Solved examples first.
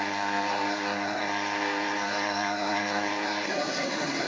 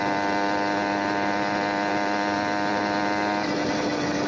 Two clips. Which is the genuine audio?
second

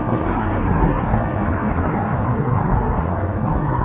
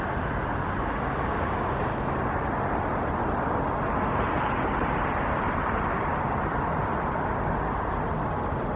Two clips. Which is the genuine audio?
second